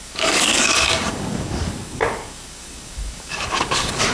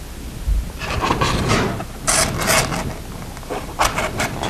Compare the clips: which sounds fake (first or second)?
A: first